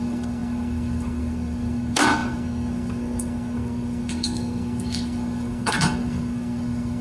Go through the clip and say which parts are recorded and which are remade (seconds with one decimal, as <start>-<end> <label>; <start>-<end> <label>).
0.0-7.0 remade